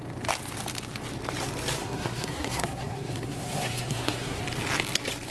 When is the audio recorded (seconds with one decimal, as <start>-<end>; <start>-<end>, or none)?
0.0-1.8; 4.4-5.3